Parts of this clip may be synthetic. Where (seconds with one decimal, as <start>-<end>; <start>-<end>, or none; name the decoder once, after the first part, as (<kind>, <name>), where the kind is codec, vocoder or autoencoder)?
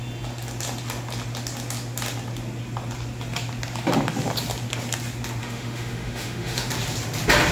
5.4-6.7 (autoencoder, DAC-VAE)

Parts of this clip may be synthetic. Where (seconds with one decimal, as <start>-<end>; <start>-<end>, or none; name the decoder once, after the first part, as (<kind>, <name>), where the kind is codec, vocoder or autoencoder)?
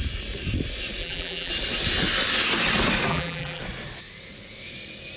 1.0-1.5 (vocoder, BigVGAN v2); 3.1-3.6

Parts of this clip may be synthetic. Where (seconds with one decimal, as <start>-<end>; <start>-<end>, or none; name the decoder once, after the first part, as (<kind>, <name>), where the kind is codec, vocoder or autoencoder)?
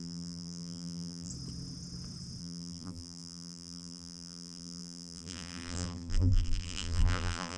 0.0-1.3 (vocoder, BigVGAN v2); 2.4-7.6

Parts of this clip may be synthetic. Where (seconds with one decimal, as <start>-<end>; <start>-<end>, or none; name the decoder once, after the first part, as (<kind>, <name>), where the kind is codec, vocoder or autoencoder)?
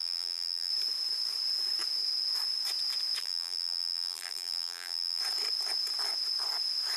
0.0-0.7 (vocoder, BigVGAN v2); 3.2-5.2